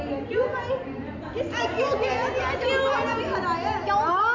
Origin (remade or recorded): recorded